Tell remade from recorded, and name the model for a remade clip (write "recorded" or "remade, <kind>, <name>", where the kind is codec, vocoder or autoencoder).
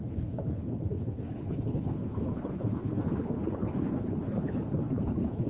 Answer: remade, codec, HILCodec